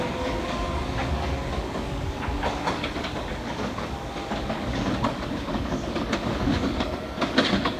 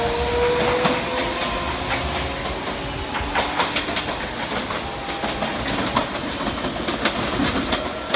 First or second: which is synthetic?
first